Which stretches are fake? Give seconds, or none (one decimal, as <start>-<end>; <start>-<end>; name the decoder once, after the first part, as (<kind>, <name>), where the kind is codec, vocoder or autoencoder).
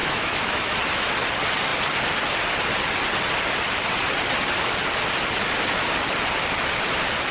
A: 0.0-0.8 (autoencoder, DAC-VAE)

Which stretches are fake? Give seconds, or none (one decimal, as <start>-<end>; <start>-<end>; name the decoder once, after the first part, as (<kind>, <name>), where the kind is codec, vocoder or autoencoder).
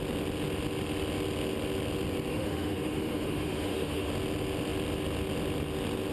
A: 2.3-4.1 (autoencoder, DAC-VAE)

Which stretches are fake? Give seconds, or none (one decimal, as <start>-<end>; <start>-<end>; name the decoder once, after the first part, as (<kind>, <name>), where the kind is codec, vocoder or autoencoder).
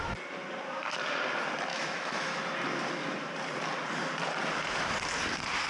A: 1.7-2.4 (autoencoder, DAC-VAE)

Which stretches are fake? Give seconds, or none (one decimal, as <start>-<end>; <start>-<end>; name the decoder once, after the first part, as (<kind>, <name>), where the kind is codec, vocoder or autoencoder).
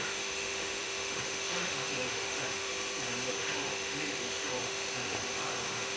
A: 0.0-2.7 (autoencoder, DAC-VAE); 3.3-6.0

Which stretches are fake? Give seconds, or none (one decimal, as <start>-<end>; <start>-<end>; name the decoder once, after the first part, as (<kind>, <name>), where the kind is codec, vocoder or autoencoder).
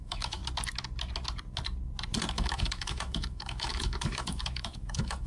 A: 0.0-0.4 (autoencoder, DAC-VAE); 2.3-5.3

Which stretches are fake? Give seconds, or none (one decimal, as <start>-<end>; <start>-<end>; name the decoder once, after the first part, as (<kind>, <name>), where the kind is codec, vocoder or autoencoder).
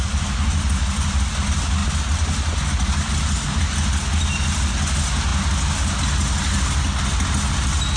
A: none